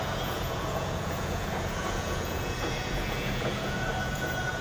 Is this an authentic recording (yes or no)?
no